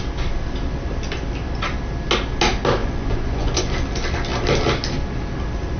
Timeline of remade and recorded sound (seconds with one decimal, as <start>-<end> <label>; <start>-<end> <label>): 0.0-2.8 recorded; 2.8-3.6 remade; 3.6-5.8 recorded